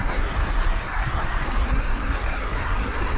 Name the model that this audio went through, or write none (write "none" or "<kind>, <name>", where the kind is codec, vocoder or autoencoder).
codec, SNAC